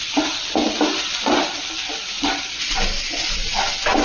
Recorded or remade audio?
recorded